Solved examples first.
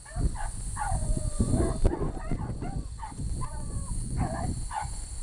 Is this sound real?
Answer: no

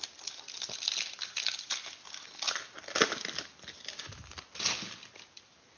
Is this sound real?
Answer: yes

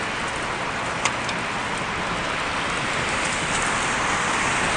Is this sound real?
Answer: yes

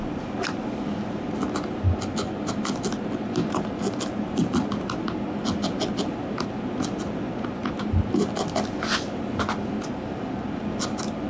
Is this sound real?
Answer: yes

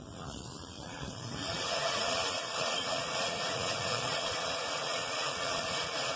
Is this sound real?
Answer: no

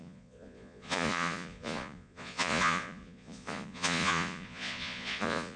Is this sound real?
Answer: no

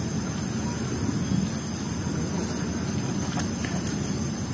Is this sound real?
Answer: yes